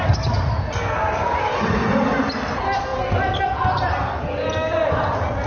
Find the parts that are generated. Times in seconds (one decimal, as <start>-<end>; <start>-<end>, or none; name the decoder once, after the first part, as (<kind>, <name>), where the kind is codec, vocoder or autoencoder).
none